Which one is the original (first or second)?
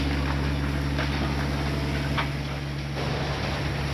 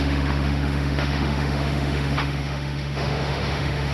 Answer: first